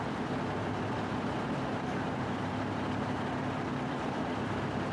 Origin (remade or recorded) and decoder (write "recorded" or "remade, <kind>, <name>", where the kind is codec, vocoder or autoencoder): remade, vocoder, BigVGAN v2